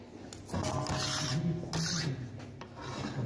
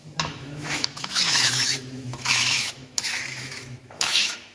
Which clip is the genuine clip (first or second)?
first